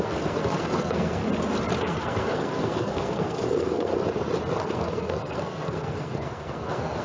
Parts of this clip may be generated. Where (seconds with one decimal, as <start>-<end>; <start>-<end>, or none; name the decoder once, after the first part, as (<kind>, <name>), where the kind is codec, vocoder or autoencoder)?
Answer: 0.0-1.2 (codec, SNAC); 1.8-3.9; 4.5-7.0